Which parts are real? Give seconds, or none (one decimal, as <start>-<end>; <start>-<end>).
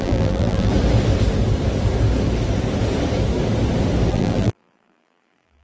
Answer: 0.7-4.1